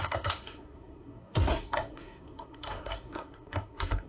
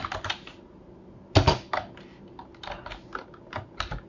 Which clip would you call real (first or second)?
second